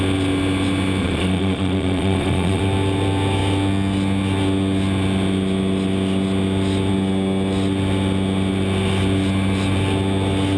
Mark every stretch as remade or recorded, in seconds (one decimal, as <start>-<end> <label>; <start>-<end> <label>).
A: 0.0-1.0 recorded; 1.0-2.6 remade; 2.6-10.6 recorded